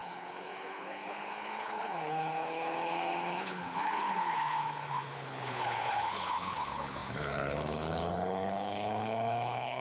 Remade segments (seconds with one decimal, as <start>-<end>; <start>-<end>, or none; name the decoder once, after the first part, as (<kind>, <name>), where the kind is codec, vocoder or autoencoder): 0.0-9.8 (codec, HILCodec)